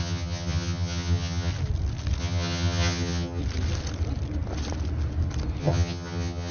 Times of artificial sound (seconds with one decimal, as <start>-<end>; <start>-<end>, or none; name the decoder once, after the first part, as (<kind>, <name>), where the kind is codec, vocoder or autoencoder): 0.0-1.5 (vocoder, HiFi-GAN); 2.2-3.4; 5.6-6.5